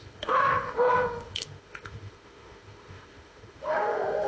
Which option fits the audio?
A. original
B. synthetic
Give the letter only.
B